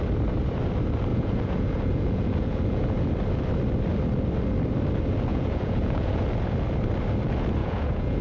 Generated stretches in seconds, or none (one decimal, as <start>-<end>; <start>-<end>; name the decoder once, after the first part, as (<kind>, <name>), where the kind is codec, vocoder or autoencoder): 1.1-3.1 (vocoder, Vocos); 5.3-6.2; 7.6-8.2